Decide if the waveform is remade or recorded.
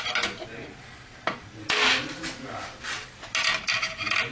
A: recorded